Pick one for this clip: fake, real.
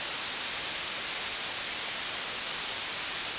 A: real